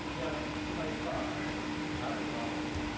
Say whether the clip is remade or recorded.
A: recorded